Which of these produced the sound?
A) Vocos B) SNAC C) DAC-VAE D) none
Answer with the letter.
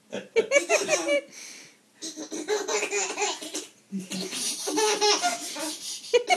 D